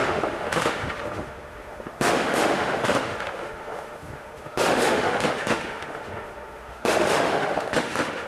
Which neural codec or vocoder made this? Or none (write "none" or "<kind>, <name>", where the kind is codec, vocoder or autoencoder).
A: autoencoder, DAC-VAE